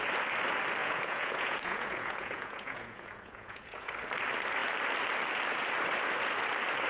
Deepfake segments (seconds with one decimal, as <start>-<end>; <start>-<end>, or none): 0.8-3.9